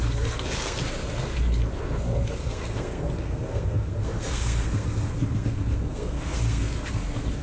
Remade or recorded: remade